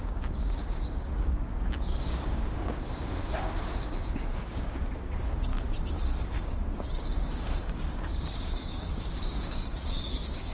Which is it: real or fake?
fake